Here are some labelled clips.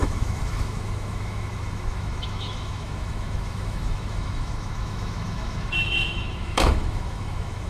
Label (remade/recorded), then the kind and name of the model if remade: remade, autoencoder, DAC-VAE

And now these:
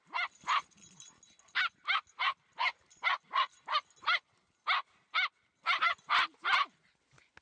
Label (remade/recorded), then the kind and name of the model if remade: recorded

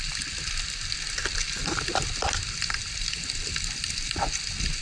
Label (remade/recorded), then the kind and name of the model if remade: recorded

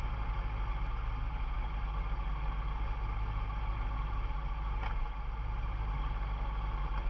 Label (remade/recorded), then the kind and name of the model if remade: recorded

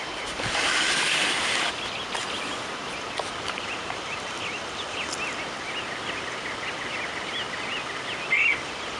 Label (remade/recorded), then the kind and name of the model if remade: recorded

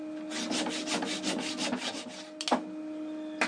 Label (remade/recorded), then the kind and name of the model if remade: recorded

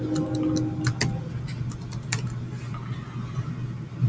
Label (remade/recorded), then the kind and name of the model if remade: recorded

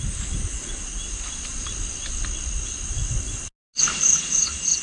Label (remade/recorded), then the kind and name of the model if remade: recorded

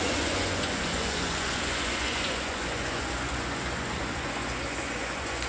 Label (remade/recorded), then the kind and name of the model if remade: remade, vocoder, Vocos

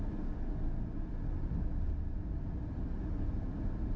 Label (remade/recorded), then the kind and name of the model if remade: recorded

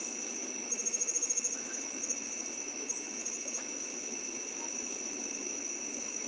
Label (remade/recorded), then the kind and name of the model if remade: remade, autoencoder, DAC-VAE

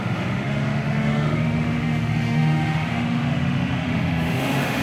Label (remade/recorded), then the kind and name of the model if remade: remade, autoencoder, DAC-VAE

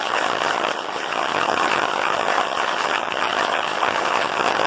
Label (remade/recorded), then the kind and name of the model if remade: remade, vocoder, HiFi-GAN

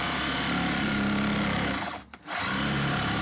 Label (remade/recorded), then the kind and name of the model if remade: remade, vocoder, BigVGAN v2